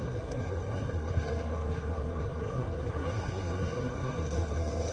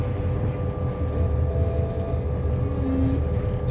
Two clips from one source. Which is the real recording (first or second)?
second